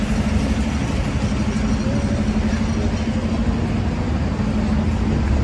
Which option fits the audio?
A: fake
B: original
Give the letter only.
B